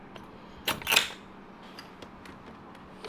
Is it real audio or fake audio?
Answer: real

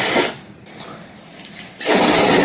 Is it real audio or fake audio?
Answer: real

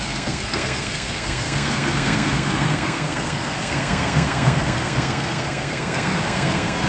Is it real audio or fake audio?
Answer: fake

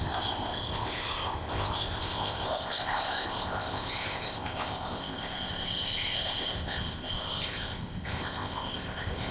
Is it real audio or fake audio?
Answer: fake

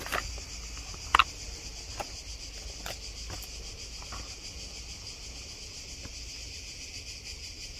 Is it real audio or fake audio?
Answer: real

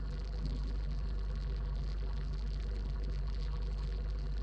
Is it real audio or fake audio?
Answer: fake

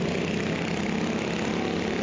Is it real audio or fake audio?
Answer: real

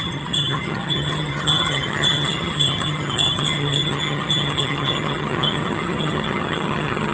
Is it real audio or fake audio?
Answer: fake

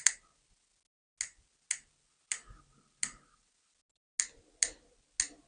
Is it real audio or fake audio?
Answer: real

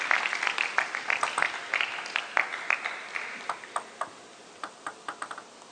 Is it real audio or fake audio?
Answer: real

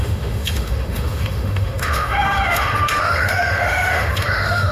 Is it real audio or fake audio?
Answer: fake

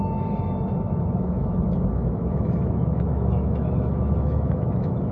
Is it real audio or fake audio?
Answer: fake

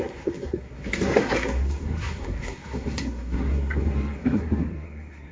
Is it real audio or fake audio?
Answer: fake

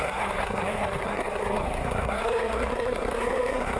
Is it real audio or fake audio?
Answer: fake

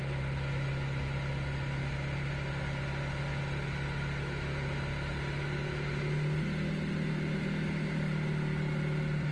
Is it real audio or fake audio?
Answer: real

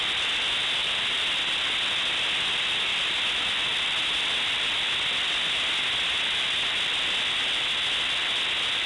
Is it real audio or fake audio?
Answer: real